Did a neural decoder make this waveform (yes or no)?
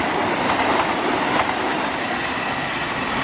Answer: no